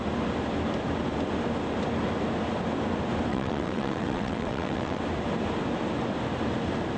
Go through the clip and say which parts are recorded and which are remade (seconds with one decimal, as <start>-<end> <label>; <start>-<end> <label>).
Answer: 0.0-3.3 recorded; 3.3-5.0 remade; 5.0-7.0 recorded